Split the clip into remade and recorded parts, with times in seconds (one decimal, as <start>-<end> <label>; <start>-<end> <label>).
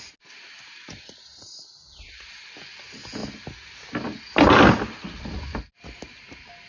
0.0-6.7 recorded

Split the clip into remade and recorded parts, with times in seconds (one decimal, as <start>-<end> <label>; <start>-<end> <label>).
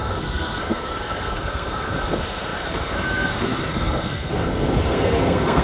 0.0-5.6 remade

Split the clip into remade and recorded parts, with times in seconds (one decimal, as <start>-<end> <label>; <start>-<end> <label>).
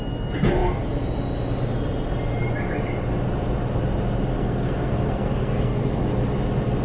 0.0-4.3 recorded; 4.3-6.0 remade; 6.0-6.8 recorded